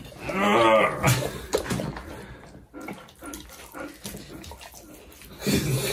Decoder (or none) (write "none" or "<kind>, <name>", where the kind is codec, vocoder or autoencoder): none